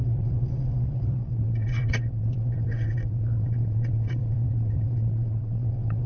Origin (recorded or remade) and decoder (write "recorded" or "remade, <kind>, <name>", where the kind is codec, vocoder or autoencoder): remade, vocoder, WaveNeXt